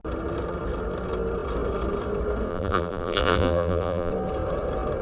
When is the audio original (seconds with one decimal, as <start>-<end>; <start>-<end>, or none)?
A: 0.0-2.5; 4.1-5.0